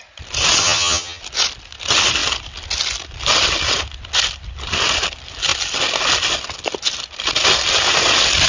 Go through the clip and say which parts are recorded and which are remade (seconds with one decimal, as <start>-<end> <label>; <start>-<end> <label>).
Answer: 0.0-0.6 recorded; 0.6-1.2 remade; 1.2-8.5 recorded